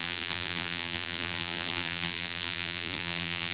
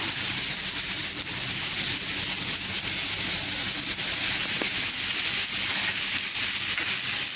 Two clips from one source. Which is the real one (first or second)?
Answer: second